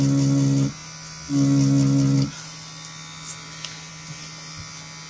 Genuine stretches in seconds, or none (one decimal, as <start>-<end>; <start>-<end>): 0.0-5.1